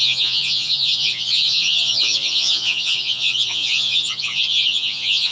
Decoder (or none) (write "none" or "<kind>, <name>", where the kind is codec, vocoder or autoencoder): vocoder, Vocos